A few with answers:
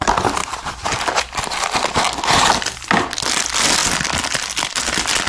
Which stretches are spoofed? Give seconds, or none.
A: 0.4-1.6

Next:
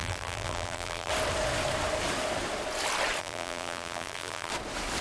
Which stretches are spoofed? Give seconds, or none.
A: 0.0-1.1; 3.2-4.5

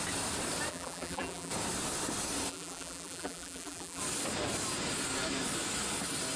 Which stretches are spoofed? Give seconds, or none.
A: 0.7-1.5; 2.5-4.0